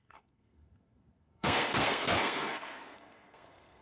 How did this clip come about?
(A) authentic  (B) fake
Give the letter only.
B